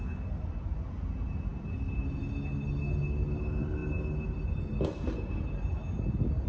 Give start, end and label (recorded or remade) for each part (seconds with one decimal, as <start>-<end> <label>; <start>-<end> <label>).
0.0-6.5 recorded